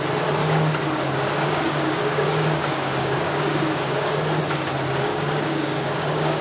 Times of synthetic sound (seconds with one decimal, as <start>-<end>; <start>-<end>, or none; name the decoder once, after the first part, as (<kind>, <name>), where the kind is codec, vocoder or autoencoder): 0.4-4.2 (codec, DAC); 5.1-6.4